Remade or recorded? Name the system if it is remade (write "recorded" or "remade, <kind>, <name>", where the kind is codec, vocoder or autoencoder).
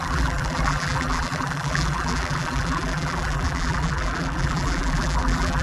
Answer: remade, vocoder, BigVGAN v2